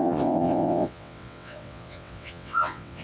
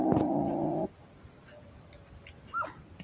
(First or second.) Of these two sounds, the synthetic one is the first